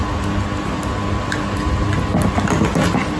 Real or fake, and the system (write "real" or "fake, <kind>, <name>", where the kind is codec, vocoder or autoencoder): real